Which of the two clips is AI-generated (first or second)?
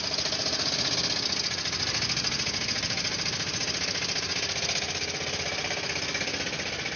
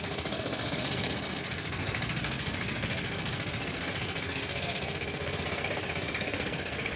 second